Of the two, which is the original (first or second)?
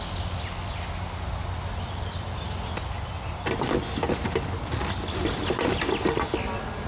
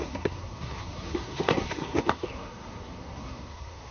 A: first